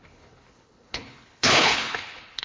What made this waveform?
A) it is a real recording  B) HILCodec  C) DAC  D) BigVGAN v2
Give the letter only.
B